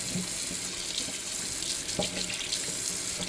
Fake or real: real